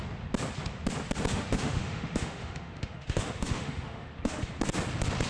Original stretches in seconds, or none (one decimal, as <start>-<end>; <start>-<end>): 0.0-1.3; 4.5-5.3